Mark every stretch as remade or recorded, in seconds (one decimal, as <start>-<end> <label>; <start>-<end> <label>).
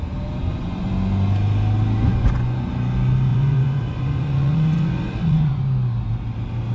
0.0-0.4 recorded; 0.4-0.9 remade; 0.9-2.1 recorded; 2.1-2.7 remade; 2.7-3.3 recorded; 3.3-5.6 remade; 5.6-6.7 recorded